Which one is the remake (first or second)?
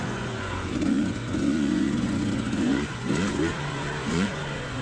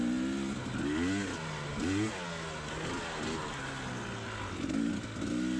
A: first